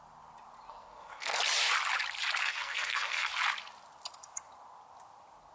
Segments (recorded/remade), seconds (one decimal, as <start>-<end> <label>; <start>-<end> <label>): 0.0-0.7 recorded; 0.7-1.4 remade; 1.4-2.4 recorded; 2.4-3.3 remade; 3.3-5.5 recorded